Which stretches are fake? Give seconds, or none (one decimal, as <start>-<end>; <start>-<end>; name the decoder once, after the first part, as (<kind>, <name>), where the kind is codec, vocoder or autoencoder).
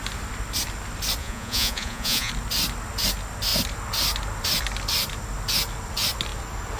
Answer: 1.2-2.3 (vocoder, Vocos)